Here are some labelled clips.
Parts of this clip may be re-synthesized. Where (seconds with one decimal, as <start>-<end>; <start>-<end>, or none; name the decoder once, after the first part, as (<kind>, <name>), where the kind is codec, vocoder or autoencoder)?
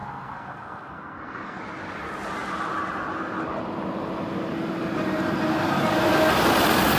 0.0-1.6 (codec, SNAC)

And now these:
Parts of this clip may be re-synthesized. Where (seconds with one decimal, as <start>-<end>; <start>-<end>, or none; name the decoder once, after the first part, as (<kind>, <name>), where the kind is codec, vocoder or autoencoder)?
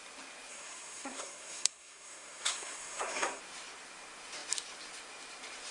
0.5-3.4 (codec, SNAC)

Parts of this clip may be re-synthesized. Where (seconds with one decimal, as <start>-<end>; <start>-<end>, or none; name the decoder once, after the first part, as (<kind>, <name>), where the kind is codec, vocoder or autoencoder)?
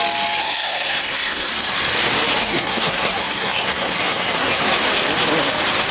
0.4-1.5 (codec, SNAC); 2.4-4.6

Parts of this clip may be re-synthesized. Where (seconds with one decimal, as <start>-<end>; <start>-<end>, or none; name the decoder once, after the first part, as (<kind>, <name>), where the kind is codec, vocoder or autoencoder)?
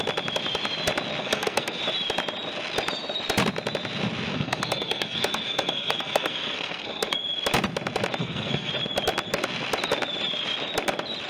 1.2-1.8 (codec, SNAC); 4.3-7.2; 8.2-8.7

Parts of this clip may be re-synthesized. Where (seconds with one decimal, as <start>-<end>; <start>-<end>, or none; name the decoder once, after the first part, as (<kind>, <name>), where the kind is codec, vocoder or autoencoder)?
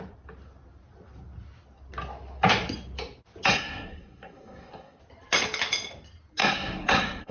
3.5-5.0 (codec, SNAC); 6.4-7.3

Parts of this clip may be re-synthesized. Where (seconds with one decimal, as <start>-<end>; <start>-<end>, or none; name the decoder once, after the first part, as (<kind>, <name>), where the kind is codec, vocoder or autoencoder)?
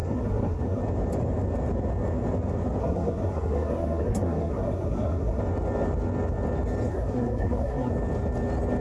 0.0-0.8 (codec, SNAC); 2.8-5.4; 6.9-7.9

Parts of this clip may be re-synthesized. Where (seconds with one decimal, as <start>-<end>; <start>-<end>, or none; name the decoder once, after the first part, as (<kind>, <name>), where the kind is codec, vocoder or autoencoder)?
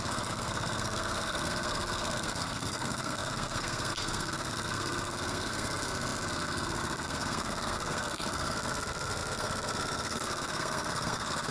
0.0-11.5 (codec, SNAC)